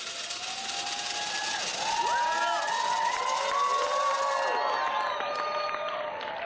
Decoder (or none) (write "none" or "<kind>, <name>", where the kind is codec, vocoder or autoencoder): none